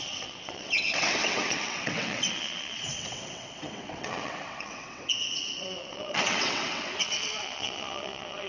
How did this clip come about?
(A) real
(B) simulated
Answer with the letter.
B